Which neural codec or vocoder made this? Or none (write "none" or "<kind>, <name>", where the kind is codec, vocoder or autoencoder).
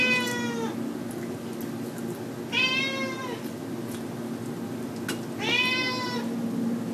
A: none